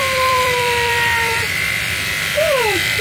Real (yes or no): no